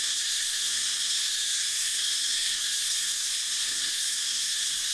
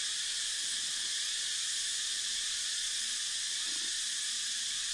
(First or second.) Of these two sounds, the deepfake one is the first